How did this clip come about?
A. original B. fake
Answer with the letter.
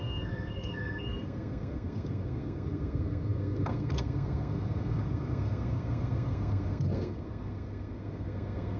B